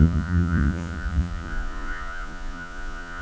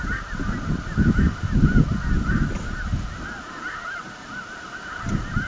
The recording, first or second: second